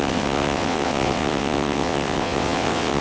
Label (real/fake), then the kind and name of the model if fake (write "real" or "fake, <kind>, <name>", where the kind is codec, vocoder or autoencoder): fake, vocoder, WaveNeXt